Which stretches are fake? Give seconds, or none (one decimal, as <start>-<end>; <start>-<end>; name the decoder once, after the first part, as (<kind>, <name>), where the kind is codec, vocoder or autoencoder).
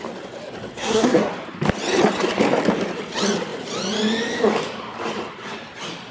0.8-1.3 (codec, SNAC)